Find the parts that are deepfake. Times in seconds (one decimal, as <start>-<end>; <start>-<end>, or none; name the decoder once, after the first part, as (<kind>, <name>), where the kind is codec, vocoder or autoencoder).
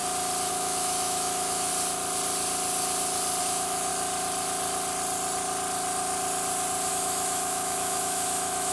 0.5-1.7 (autoencoder, DAC-VAE); 3.4-3.9; 6.9-8.7